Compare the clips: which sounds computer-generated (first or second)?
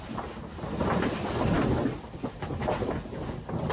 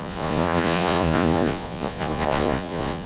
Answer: second